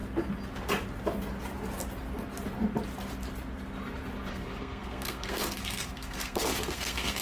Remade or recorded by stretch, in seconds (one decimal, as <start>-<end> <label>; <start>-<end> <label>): 0.0-4.3 recorded; 4.3-7.2 remade